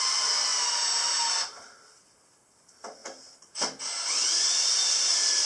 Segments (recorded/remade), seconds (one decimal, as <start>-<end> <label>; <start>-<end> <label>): 0.0-5.5 recorded